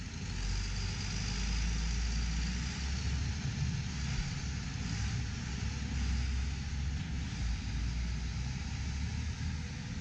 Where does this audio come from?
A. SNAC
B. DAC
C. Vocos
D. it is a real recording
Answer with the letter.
D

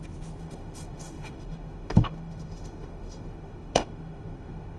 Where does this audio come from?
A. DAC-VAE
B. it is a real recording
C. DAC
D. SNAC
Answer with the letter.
A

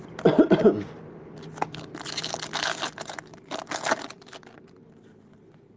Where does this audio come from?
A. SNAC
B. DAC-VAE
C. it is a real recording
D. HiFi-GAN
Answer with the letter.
C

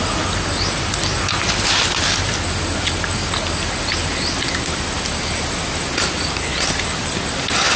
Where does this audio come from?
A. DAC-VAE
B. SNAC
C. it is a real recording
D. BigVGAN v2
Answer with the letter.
C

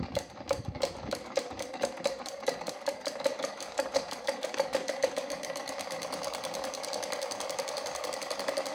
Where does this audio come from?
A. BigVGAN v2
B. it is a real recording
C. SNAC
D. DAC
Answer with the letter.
D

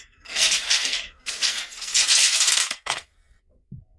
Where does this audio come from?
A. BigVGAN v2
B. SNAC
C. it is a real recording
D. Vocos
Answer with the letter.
B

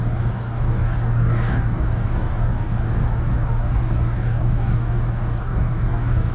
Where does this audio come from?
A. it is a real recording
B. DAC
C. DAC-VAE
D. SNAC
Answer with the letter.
B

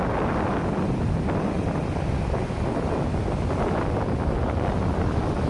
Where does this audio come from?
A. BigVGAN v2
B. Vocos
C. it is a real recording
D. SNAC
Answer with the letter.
C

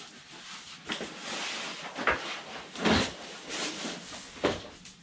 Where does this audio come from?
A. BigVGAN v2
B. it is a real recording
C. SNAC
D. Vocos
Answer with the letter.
B